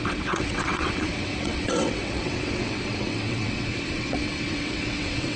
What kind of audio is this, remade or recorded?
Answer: remade